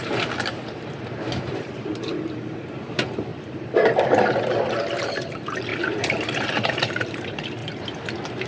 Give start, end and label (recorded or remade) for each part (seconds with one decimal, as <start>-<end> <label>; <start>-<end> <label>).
0.0-3.3 remade; 3.3-4.7 recorded; 4.7-7.6 remade; 7.6-8.5 recorded